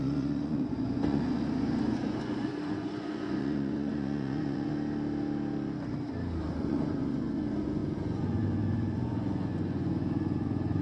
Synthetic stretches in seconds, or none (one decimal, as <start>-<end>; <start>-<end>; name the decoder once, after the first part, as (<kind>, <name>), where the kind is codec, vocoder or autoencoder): 0.0-4.7 (vocoder, Vocos); 6.5-10.8